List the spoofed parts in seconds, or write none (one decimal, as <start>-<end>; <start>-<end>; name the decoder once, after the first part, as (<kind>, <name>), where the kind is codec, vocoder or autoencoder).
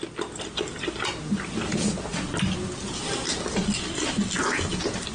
none